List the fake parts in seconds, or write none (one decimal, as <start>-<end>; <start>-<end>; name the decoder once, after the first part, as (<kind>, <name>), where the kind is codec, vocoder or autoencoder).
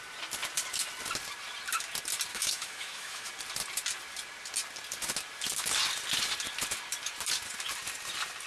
2.3-3.3 (autoencoder, DAC-VAE)